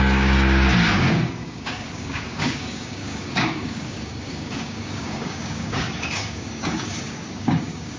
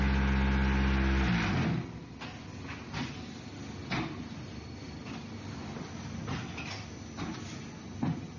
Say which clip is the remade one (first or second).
first